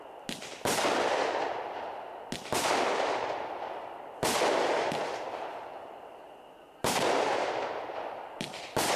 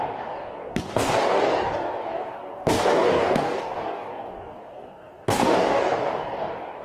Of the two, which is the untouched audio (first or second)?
first